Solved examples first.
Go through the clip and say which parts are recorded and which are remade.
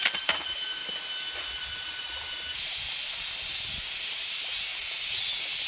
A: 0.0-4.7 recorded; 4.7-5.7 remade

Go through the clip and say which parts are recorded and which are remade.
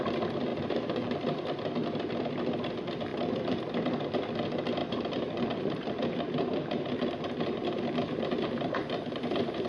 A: 0.0-0.5 recorded; 0.5-1.1 remade; 1.1-3.1 recorded; 3.1-3.6 remade; 3.6-4.8 recorded; 4.8-9.7 remade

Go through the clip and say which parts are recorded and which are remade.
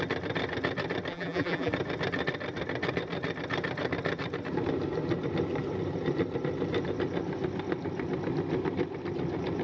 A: 0.0-1.1 recorded; 1.1-1.7 remade; 1.7-9.6 recorded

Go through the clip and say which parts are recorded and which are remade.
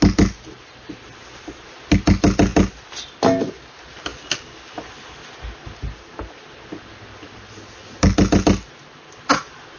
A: 0.0-9.8 recorded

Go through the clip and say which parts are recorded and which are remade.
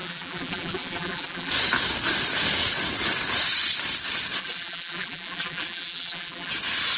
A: 0.0-1.5 remade; 1.5-4.4 recorded; 4.4-6.5 remade; 6.5-7.0 recorded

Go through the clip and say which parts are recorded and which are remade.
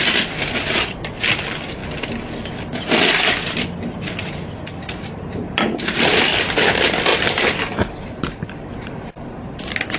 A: 0.0-7.1 recorded; 7.1-9.6 remade; 9.6-10.0 recorded